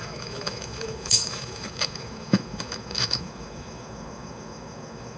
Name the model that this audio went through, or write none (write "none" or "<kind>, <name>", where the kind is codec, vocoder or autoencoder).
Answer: autoencoder, DAC-VAE